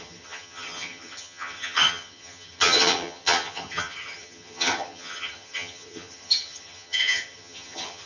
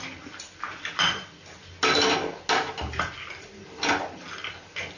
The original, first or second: second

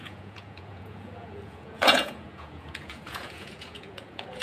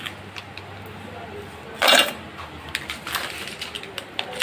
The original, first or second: second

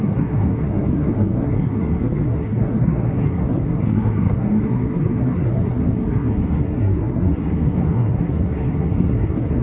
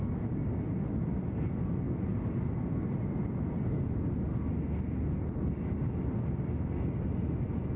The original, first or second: second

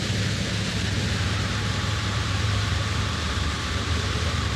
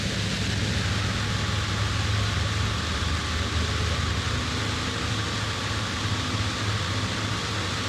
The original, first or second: second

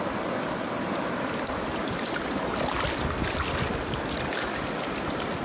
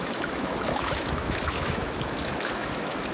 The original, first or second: first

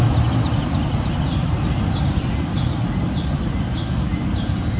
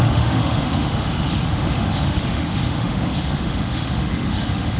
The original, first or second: first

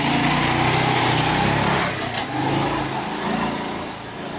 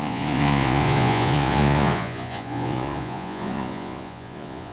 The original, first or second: first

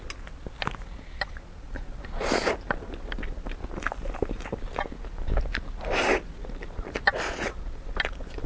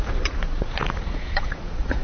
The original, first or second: first